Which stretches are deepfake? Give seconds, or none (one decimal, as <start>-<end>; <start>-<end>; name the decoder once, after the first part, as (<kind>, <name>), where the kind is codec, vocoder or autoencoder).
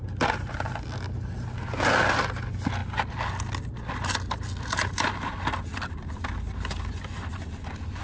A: none